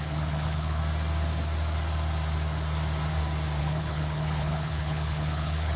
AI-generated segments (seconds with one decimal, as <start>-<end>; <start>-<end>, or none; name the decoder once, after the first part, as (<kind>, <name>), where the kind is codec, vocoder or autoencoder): 0.0-0.8 (codec, HILCodec); 3.6-5.8